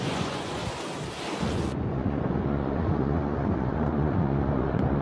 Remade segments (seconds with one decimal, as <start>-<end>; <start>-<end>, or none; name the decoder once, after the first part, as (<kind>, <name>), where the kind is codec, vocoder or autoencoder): 0.0-0.6 (vocoder, Vocos); 1.4-5.0